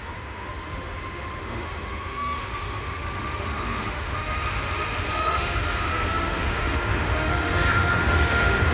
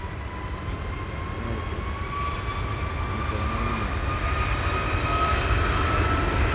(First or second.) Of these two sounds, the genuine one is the second